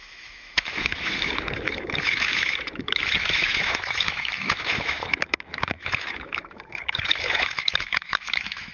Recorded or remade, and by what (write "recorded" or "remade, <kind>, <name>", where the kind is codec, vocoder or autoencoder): remade, autoencoder, DAC-VAE